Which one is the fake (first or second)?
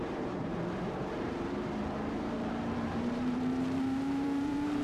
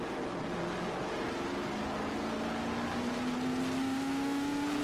first